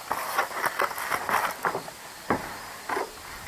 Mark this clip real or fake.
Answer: real